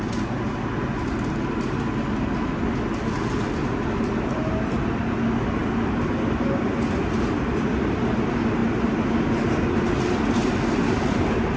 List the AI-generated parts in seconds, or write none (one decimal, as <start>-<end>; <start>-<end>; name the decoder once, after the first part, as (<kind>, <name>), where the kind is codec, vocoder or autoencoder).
none